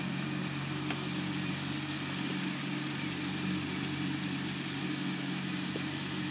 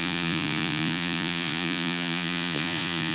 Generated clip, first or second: second